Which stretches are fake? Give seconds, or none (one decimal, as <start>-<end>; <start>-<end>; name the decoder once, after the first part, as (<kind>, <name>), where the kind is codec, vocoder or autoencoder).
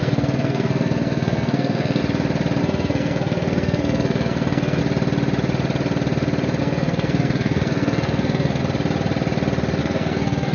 0.0-2.0 (codec, SNAC); 2.6-4.8; 6.6-8.6; 9.8-10.5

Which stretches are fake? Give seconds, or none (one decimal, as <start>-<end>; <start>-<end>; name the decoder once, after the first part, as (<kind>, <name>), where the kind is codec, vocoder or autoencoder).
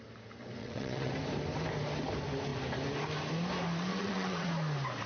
0.6-1.1 (vocoder, WaveNeXt); 3.9-4.5